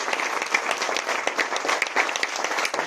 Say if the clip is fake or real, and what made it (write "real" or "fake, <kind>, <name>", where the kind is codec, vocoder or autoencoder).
real